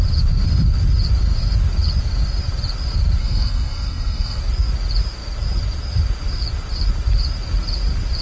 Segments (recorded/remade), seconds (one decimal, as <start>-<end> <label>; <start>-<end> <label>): 0.0-3.2 recorded; 3.2-4.4 remade; 4.4-8.2 recorded